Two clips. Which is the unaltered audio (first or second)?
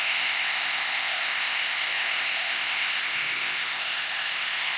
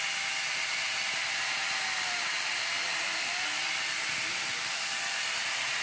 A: second